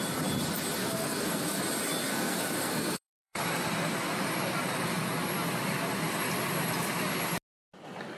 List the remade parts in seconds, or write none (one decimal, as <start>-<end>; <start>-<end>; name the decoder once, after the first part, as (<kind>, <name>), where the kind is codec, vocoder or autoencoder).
0.8-1.6 (codec, SNAC); 2.1-3.4

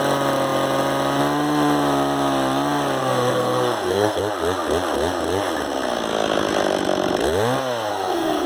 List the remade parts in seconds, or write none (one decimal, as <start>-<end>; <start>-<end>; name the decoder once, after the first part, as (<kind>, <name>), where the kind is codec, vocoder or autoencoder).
3.0-4.2 (codec, SNAC); 7.9-8.5

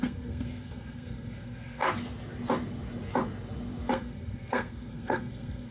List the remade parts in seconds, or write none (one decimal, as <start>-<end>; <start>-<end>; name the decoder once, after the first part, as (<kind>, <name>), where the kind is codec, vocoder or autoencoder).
0.0-1.8 (codec, SNAC); 3.9-5.7

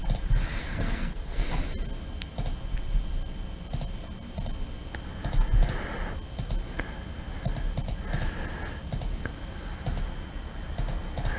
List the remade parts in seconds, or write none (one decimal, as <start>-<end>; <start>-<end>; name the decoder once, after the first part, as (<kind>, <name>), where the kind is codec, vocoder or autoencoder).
0.6-1.5 (codec, SNAC)

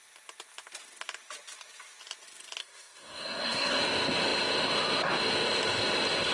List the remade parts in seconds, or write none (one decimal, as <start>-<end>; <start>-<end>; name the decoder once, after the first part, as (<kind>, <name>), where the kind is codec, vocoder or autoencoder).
2.6-3.8 (codec, SNAC)

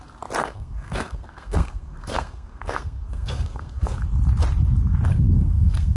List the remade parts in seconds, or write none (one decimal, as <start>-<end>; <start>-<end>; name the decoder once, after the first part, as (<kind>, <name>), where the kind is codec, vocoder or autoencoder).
0.4-4.0 (codec, SNAC); 5.1-6.0

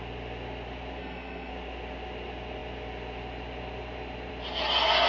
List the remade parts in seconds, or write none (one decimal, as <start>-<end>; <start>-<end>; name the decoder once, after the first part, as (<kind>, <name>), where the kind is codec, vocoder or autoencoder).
1.0-1.5 (codec, SNAC)